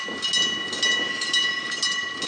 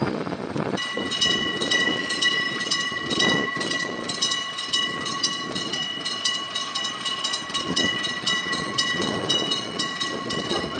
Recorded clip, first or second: first